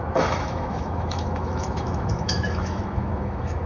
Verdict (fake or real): fake